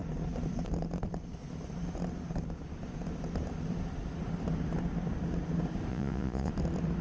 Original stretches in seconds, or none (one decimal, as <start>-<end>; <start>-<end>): 0.0-5.9; 6.5-7.0